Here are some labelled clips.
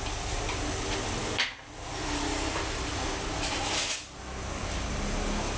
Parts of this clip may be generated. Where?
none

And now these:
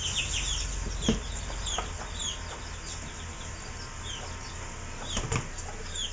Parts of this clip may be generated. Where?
none

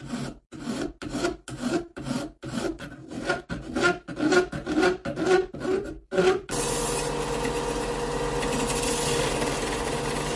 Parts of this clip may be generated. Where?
none

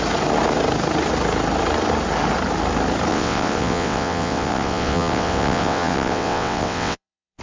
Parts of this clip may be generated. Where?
3.1-7.4 (vocoder, WaveNeXt)

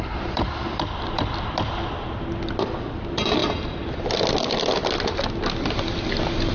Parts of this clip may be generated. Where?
0.0-3.4 (vocoder, BigVGAN v2); 6.0-6.5

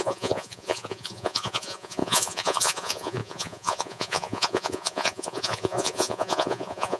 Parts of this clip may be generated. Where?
0.0-7.0 (vocoder, Vocos)

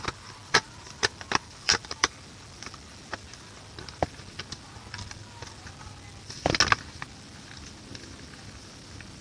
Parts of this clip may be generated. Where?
0.4-3.1 (vocoder, BigVGAN v2)